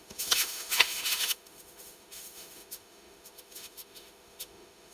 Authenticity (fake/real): fake